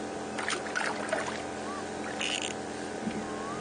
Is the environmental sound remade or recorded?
recorded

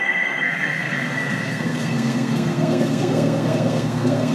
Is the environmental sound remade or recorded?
remade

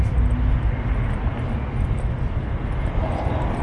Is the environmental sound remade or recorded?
recorded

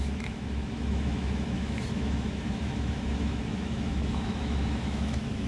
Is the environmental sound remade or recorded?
remade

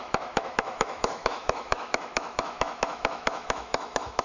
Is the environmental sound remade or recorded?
remade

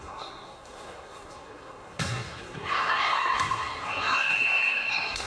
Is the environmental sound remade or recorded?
remade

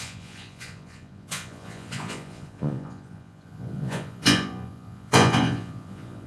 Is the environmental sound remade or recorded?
remade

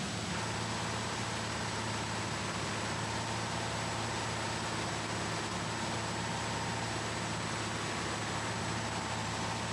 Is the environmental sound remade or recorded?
recorded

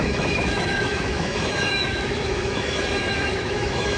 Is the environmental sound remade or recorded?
remade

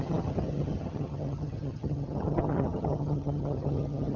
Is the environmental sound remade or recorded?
remade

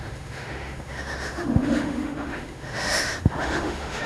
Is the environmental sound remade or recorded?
remade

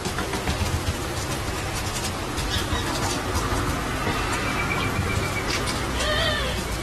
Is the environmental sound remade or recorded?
recorded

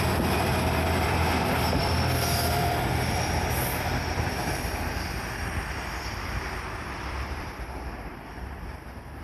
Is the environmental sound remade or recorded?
remade